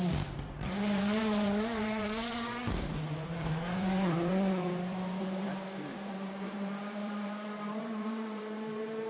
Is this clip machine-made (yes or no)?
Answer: yes